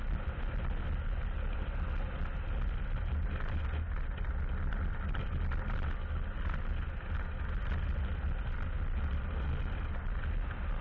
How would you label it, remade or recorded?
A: recorded